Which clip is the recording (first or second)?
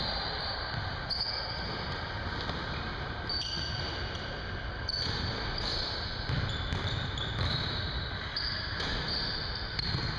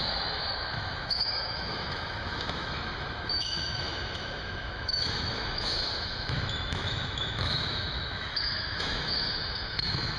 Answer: first